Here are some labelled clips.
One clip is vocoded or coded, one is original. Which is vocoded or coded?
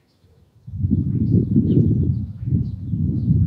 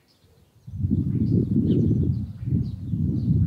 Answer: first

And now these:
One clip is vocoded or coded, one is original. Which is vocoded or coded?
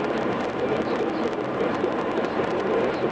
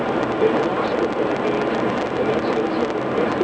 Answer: first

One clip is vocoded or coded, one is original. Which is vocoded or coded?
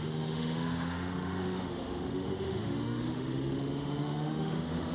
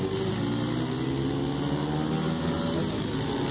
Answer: first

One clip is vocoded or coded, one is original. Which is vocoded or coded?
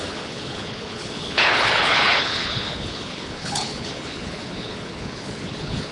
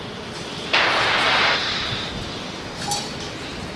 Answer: first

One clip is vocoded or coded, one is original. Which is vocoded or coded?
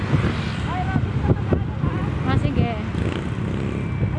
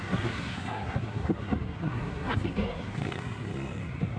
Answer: second